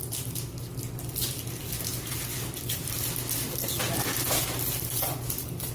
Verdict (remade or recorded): recorded